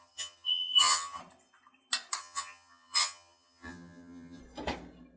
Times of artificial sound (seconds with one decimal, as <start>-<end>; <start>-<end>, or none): 0.0-1.2; 2.2-4.4